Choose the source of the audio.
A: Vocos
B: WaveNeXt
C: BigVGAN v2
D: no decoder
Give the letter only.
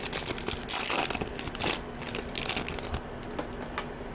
D